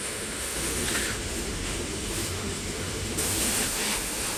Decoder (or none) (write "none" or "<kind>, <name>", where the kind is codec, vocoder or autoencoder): autoencoder, DAC-VAE